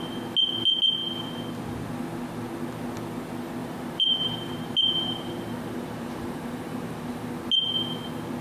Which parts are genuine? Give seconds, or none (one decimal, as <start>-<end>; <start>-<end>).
0.0-3.6; 6.9-8.4